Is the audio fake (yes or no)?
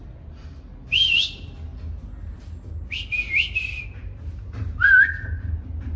no